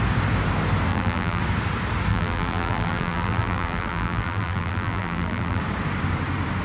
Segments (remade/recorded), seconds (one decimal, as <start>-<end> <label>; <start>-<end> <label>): 0.0-0.9 recorded; 0.9-1.4 remade; 1.4-2.1 recorded; 2.1-5.6 remade; 5.6-6.6 recorded